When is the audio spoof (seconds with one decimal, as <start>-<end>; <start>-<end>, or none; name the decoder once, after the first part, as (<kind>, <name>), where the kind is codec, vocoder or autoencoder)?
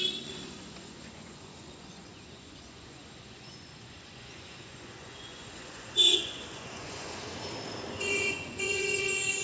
0.0-7.2 (vocoder, Vocos); 7.9-9.4